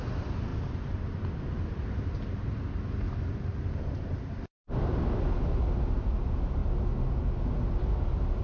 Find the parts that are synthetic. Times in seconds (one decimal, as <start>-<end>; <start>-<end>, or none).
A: 0.5-1.8; 4.6-5.3